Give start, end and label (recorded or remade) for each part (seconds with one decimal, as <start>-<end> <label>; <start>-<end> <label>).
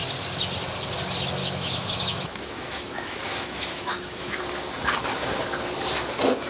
0.0-1.4 recorded; 1.4-4.4 remade; 4.4-6.5 recorded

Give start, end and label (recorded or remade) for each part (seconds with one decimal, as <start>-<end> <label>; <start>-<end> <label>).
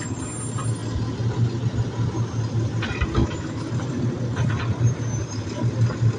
0.0-3.2 recorded; 3.2-3.7 remade; 3.7-6.2 recorded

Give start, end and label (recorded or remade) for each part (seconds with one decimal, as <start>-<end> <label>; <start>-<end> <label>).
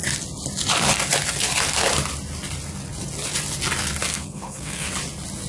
0.0-4.1 recorded; 4.1-4.9 remade; 4.9-5.5 recorded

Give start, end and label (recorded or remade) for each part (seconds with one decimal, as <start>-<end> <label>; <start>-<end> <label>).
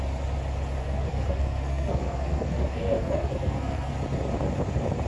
0.0-0.8 recorded; 0.8-3.9 remade; 3.9-5.1 recorded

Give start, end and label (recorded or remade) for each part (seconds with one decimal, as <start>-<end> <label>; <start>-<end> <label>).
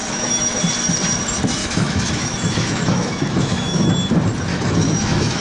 0.0-0.6 remade; 0.6-1.6 recorded; 1.6-3.9 remade; 3.9-4.5 recorded; 4.5-5.4 remade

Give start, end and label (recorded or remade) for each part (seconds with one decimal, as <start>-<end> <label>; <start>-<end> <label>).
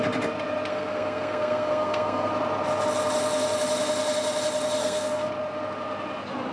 0.0-0.7 recorded; 0.7-2.3 remade; 2.3-4.8 recorded; 4.8-5.3 remade; 5.3-6.5 recorded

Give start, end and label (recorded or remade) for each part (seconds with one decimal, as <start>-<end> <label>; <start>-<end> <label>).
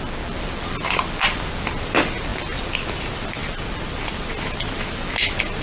0.0-5.6 recorded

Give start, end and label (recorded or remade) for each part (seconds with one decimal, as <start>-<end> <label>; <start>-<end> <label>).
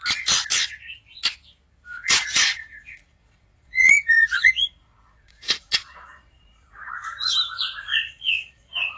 0.0-1.9 recorded; 1.9-6.9 remade; 6.9-7.9 recorded; 7.9-9.0 remade